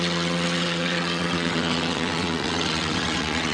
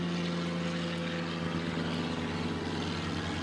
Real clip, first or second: second